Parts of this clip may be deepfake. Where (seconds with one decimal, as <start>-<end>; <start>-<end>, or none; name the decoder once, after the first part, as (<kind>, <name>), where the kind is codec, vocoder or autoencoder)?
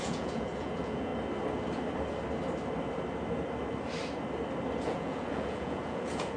0.0-1.1 (vocoder, Vocos); 4.8-6.4